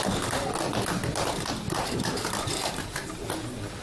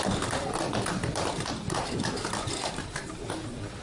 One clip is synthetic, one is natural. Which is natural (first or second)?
first